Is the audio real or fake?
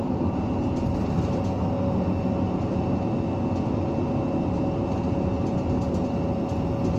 real